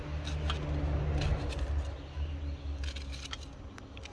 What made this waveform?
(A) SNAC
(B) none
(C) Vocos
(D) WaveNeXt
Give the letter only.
B